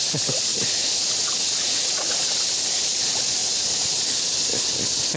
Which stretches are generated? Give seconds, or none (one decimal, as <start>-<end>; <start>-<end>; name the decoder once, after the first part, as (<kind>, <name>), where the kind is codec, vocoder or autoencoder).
0.5-2.2 (vocoder, Vocos); 3.4-3.9